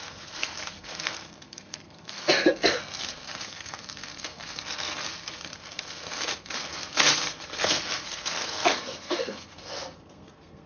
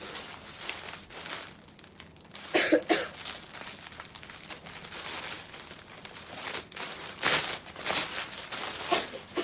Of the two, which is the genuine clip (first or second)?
second